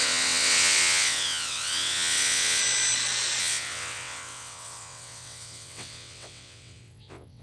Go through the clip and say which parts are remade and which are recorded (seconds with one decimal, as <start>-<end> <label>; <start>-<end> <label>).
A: 0.0-2.6 remade; 2.6-3.4 recorded; 3.4-7.4 remade